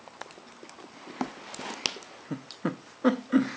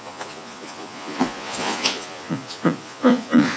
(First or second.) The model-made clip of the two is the second